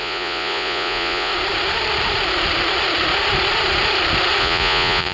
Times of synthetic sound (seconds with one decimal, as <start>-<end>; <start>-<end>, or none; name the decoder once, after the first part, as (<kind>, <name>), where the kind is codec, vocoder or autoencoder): 0.0-1.3 (vocoder, Vocos); 4.4-5.1